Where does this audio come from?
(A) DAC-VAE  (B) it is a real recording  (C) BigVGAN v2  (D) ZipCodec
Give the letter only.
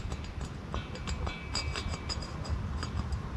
B